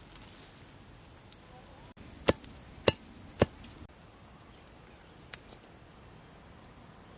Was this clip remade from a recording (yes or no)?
no